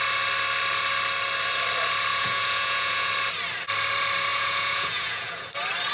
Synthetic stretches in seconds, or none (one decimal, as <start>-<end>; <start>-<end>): 2.1-3.1; 4.3-5.5